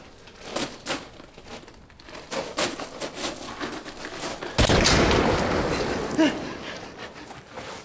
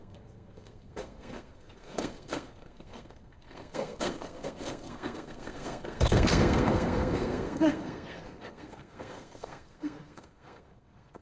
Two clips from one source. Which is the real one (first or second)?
first